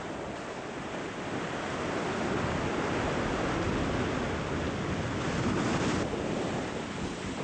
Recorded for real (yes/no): yes